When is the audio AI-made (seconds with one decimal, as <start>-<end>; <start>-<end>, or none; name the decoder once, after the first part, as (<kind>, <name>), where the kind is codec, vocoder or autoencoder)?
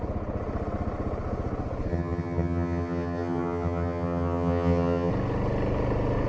1.9-5.1 (vocoder, HiFi-GAN)